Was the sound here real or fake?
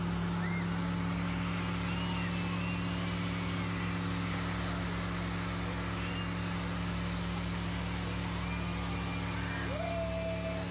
real